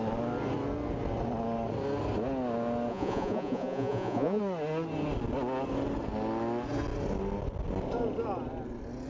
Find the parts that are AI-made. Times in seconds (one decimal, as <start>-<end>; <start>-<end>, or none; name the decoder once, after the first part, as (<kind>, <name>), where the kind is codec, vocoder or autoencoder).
2.9-4.4 (vocoder, Vocos)